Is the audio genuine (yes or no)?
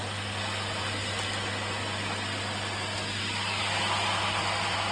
yes